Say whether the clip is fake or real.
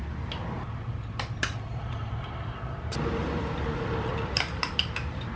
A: real